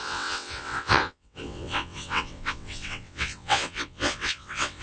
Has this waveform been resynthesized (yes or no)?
yes